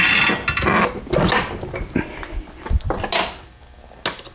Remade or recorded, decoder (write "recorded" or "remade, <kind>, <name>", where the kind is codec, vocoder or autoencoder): recorded